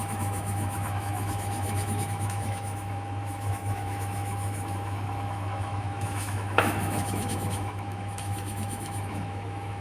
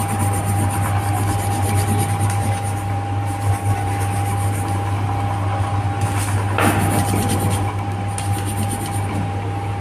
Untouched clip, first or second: second